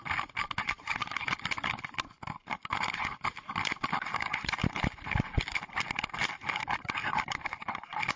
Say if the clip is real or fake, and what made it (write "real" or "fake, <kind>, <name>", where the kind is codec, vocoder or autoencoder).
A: real